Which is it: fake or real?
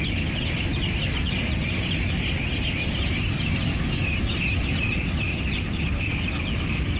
real